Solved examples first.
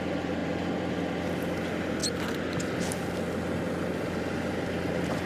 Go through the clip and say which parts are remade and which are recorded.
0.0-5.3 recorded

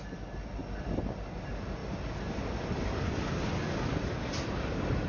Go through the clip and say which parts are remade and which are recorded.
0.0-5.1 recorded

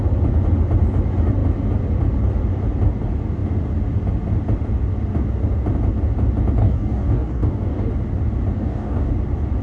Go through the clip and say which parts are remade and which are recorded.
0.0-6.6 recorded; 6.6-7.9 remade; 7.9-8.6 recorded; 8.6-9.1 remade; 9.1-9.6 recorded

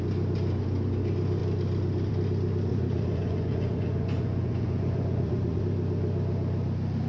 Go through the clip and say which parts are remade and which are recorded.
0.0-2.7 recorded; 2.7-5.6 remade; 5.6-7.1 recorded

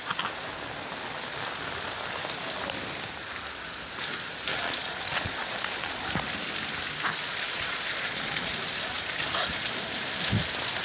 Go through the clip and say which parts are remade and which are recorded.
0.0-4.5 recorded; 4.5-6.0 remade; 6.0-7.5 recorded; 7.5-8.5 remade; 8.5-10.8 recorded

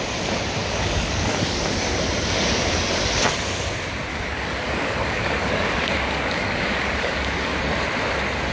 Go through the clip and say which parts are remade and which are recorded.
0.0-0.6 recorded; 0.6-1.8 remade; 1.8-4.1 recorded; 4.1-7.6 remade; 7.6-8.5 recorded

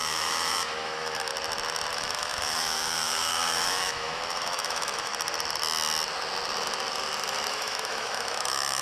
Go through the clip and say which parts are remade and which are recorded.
0.0-1.3 remade; 1.3-1.9 recorded; 1.9-5.1 remade; 5.1-7.5 recorded; 7.5-8.8 remade

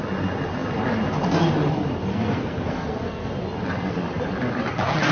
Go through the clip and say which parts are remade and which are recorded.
0.0-2.1 recorded; 2.1-3.3 remade; 3.3-5.1 recorded